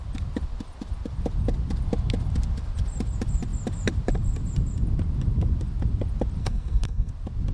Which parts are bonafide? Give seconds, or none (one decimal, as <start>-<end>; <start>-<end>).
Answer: 0.0-6.4; 7.1-7.5

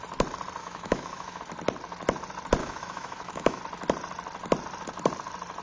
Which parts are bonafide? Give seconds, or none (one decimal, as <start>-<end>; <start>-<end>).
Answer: 0.0-0.6; 1.4-2.6; 3.6-5.6

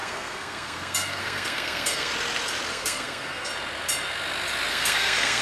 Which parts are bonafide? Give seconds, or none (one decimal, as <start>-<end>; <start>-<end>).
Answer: 2.1-2.7; 3.5-4.7

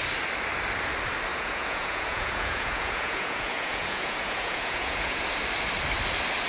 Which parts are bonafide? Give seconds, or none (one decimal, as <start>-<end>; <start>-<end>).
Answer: 0.0-1.3; 5.2-6.5

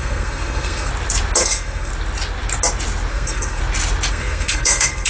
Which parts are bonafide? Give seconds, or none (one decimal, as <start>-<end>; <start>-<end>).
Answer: 0.9-1.4; 1.9-3.1; 3.6-4.1

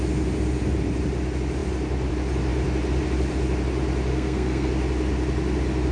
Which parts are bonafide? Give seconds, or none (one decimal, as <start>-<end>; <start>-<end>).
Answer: 0.0-4.1; 4.7-5.9

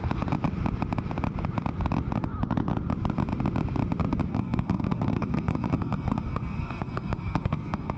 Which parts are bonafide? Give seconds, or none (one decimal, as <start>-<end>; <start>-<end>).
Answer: 0.0-4.3

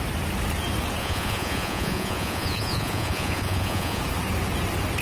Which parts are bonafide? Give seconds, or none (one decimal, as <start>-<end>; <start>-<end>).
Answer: 0.0-1.0; 4.0-5.0